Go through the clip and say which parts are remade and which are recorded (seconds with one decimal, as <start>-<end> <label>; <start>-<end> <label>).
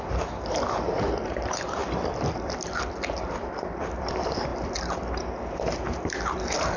0.0-6.8 remade